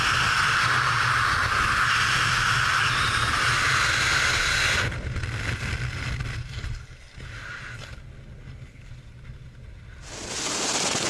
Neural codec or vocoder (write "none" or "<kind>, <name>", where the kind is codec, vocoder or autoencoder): none